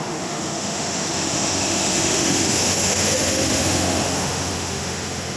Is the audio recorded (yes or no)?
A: no